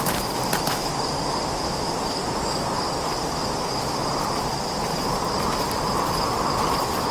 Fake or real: real